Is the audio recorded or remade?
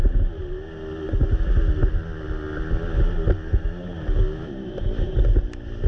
recorded